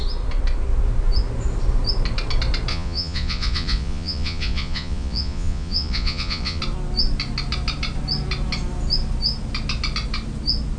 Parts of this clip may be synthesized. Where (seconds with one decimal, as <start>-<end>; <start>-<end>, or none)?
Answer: 2.7-6.6